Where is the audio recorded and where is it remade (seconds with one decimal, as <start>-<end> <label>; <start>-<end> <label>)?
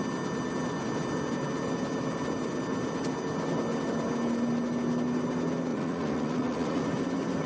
0.0-5.7 recorded; 5.7-6.8 remade; 6.8-7.5 recorded